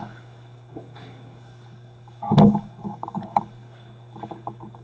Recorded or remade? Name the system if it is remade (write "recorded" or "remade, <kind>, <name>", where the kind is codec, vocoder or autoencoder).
remade, codec, DAC